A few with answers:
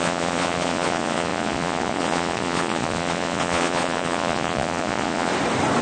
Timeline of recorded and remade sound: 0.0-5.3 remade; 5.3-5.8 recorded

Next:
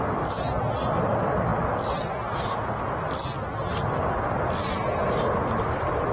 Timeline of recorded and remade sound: 0.0-6.1 recorded

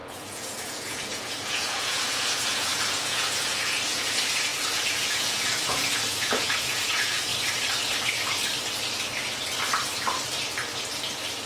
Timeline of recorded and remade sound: 0.0-7.3 remade; 7.3-11.5 recorded

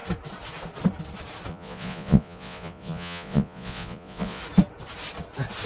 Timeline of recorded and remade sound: 0.0-1.5 recorded; 1.5-4.4 remade; 4.4-5.7 recorded